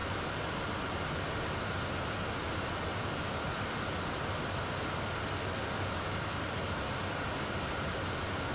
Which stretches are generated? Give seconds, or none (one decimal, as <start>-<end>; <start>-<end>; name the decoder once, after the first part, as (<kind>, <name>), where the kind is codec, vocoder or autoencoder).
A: none